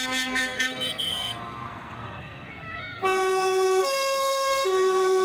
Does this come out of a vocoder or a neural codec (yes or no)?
yes